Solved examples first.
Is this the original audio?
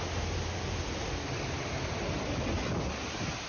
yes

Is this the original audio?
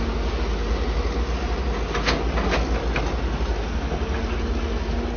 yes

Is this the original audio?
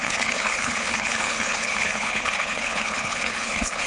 no